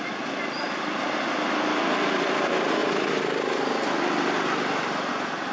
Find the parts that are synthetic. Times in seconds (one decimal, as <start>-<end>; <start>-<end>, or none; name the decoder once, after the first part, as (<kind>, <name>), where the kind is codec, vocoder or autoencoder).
none